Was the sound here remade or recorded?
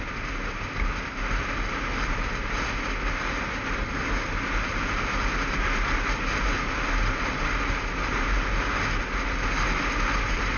recorded